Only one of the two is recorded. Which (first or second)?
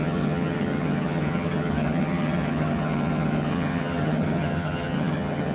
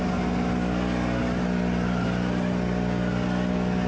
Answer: second